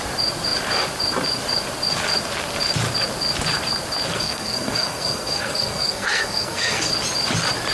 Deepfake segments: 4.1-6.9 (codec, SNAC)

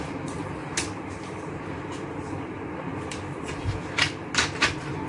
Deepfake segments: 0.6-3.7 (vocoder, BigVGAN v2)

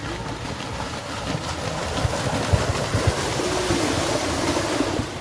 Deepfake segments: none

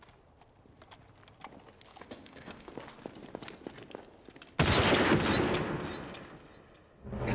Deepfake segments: 1.9-2.7 (codec, DAC)